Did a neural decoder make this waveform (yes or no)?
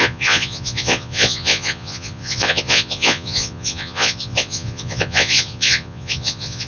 yes